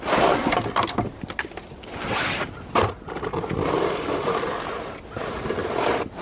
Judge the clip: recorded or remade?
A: remade